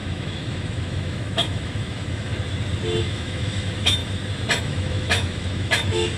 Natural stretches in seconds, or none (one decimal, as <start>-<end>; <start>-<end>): 2.3-3.0; 4.0-4.6